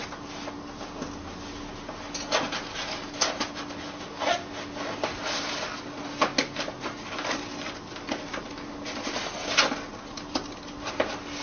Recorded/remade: recorded